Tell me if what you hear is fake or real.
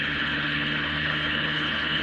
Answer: fake